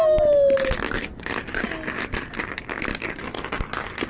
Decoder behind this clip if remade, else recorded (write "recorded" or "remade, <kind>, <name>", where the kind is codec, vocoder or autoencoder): recorded